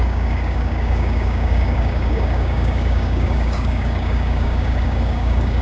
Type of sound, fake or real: fake